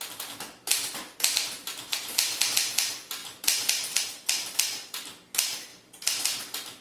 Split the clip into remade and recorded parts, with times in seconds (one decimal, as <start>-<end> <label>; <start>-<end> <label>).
0.0-6.8 recorded